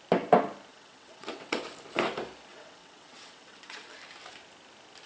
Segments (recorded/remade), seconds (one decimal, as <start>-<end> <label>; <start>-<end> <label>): 0.0-0.7 recorded; 0.7-1.6 remade; 1.6-2.5 recorded; 2.5-3.9 remade; 3.9-5.1 recorded